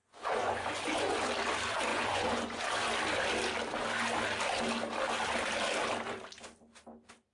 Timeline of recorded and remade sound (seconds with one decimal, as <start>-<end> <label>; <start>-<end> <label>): 0.0-1.3 remade; 1.3-1.9 recorded; 1.9-2.6 remade; 2.6-7.3 recorded